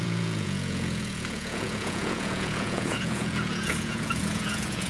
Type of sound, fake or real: fake